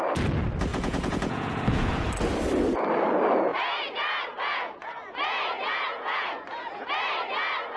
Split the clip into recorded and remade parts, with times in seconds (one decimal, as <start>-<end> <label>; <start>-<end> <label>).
0.0-0.7 recorded; 0.7-2.0 remade; 2.0-3.5 recorded; 3.5-6.9 remade; 6.9-7.8 recorded